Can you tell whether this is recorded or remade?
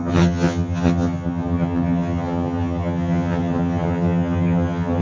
remade